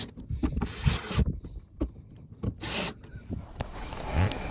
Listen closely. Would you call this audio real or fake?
real